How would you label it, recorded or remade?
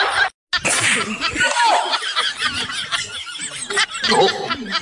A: recorded